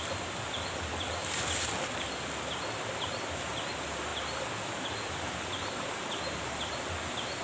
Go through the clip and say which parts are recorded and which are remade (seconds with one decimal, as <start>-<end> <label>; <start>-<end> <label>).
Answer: 0.0-7.4 recorded